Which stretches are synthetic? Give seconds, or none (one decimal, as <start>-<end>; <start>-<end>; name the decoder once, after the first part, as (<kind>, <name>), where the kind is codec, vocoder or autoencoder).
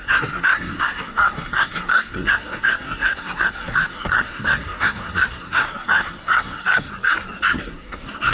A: 0.0-6.9 (codec, SNAC); 7.5-8.3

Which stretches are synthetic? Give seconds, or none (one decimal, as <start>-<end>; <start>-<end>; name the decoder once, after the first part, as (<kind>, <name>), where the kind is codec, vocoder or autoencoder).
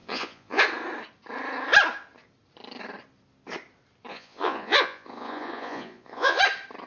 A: 0.0-0.6 (vocoder, Vocos); 4.1-6.4